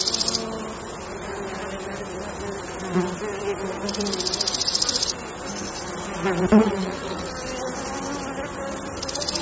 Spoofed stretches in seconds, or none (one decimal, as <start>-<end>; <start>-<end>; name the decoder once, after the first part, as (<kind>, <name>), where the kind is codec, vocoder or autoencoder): 6.5-7.3 (vocoder, Vocos)